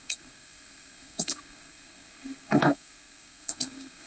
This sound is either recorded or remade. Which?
remade